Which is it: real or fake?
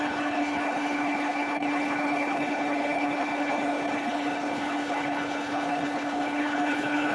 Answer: fake